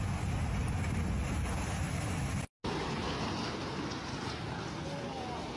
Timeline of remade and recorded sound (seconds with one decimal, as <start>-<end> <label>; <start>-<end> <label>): 0.0-5.6 recorded